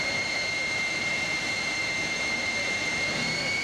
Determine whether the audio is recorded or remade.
remade